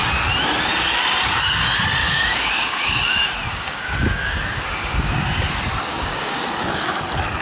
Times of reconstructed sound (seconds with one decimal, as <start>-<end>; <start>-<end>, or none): 2.0-3.0; 3.5-5.2; 5.9-6.5